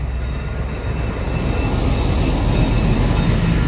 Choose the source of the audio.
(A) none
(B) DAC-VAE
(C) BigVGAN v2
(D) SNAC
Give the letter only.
A